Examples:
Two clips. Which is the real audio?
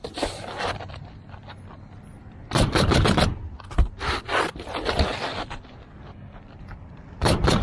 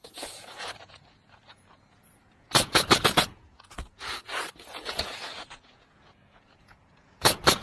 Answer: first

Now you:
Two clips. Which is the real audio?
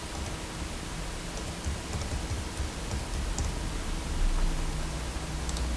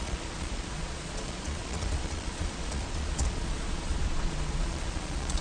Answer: first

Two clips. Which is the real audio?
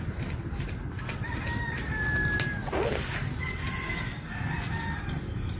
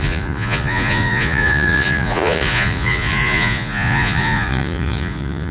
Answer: first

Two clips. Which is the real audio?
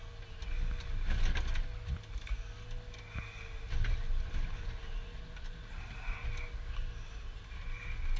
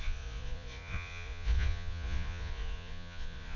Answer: first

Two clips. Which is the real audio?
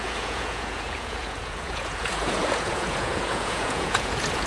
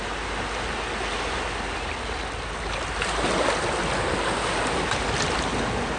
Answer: second